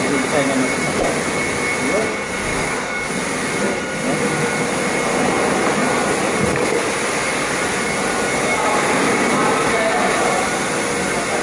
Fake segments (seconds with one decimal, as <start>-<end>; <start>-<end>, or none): 2.5-3.1